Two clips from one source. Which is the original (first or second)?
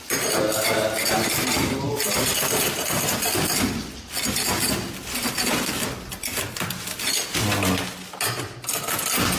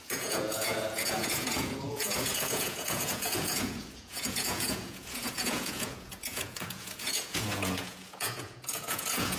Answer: first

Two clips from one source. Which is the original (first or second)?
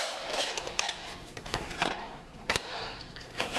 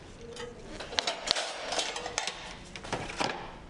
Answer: second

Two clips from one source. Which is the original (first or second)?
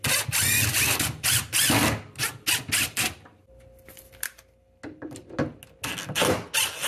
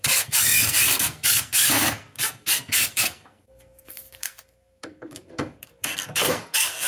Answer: first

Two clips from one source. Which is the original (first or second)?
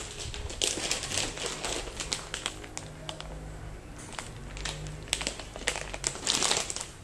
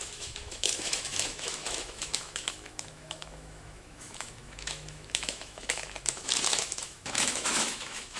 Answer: first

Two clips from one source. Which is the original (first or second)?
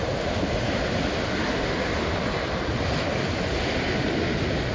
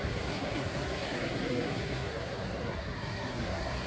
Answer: first